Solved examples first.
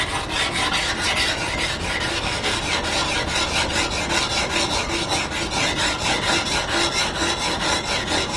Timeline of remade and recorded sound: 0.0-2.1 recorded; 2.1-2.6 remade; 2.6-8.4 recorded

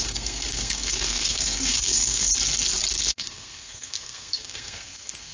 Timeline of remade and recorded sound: 0.0-2.3 remade; 2.3-3.0 recorded; 3.0-5.3 remade

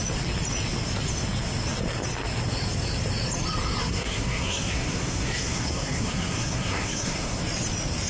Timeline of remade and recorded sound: 0.0-3.8 recorded; 3.8-7.4 remade; 7.4-8.1 recorded

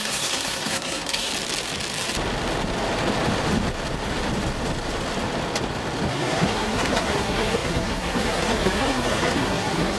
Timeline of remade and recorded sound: 0.0-1.3 remade; 1.3-6.1 recorded; 6.1-10.0 remade

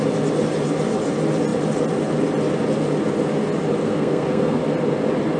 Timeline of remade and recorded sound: 0.0-3.8 recorded; 3.8-4.6 remade; 4.6-5.4 recorded

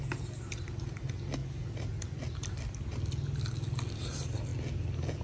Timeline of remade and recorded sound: 0.0-5.2 recorded